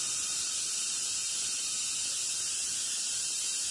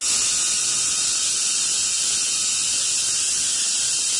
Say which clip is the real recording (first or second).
second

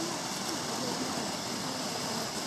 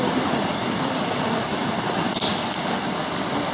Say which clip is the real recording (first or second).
first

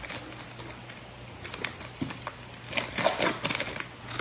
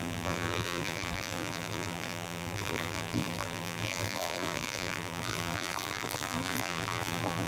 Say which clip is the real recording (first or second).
first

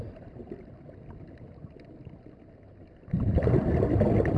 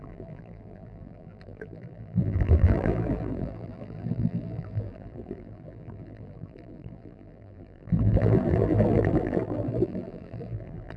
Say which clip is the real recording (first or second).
first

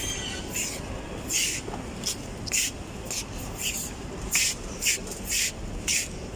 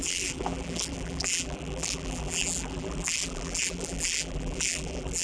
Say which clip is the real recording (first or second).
first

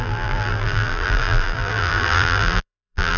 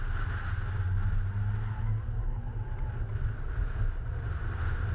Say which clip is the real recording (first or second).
second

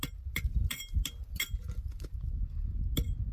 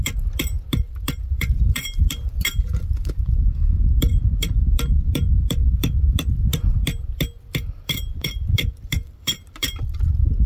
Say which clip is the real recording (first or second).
first